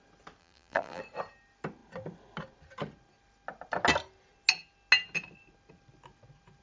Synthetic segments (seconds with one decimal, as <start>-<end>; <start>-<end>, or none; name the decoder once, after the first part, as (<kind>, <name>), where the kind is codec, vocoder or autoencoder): 0.4-1.0 (vocoder, BigVGAN v2)